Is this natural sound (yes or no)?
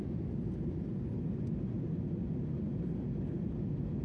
yes